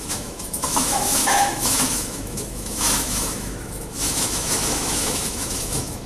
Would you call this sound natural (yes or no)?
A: no